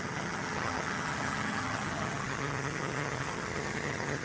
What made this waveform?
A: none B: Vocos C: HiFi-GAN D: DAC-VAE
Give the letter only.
C